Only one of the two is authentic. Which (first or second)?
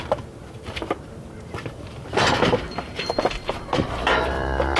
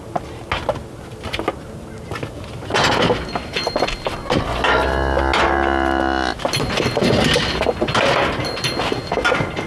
second